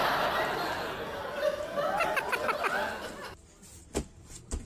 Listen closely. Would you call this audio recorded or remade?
recorded